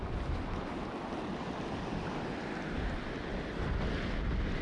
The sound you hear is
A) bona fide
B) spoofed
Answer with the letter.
A